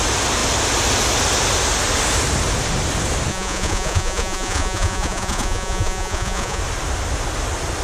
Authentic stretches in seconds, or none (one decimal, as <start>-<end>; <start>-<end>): 0.0-3.3; 6.6-7.8